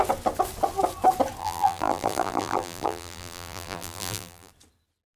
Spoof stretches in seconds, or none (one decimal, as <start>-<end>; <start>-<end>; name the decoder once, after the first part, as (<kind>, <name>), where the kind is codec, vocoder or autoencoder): 1.4-4.5 (vocoder, BigVGAN v2)